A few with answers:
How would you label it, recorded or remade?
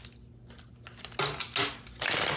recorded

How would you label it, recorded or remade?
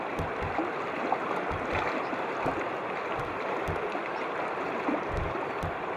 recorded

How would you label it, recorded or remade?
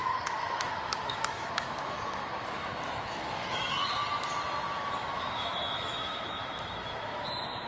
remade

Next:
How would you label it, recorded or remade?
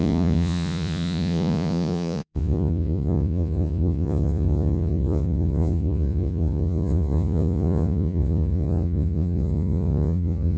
remade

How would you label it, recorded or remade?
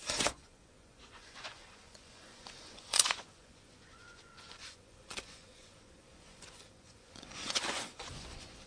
remade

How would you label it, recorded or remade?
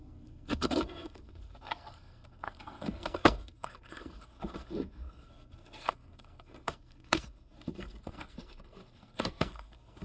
remade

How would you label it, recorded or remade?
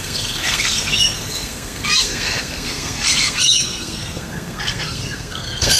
remade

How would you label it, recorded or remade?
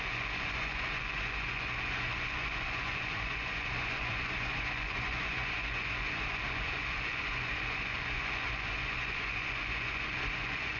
remade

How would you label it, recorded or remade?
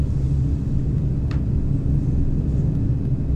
recorded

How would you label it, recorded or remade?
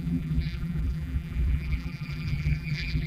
remade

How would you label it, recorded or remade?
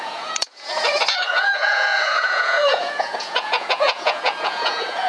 remade